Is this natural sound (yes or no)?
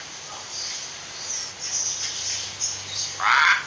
yes